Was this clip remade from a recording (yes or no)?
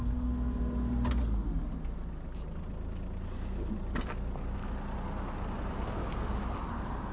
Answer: no